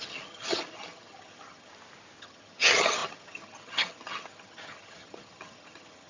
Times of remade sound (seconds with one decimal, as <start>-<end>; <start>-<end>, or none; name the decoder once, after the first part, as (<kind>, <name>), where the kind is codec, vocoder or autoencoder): 0.0-1.7 (vocoder, HiFi-GAN); 2.2-6.1